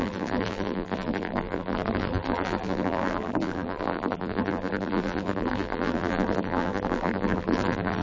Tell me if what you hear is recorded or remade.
remade